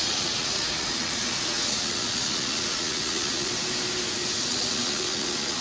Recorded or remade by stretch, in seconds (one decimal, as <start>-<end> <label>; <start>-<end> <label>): 0.0-3.5 remade; 3.5-4.5 recorded; 4.5-5.6 remade